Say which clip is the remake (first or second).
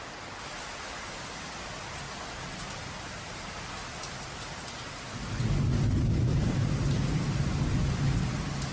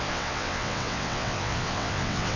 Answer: second